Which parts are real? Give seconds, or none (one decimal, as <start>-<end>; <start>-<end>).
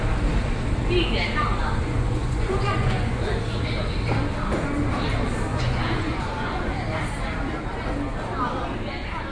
0.0-1.6; 3.2-5.5; 6.7-9.3